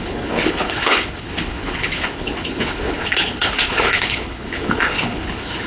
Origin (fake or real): fake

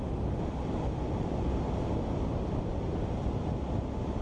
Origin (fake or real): real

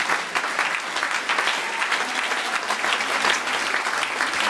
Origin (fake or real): real